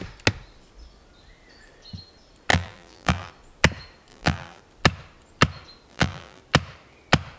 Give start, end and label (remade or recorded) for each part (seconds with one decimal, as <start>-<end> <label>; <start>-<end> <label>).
0.0-2.5 recorded; 2.5-3.3 remade; 3.3-4.1 recorded; 4.1-4.6 remade; 4.6-5.9 recorded; 5.9-6.4 remade; 6.4-7.4 recorded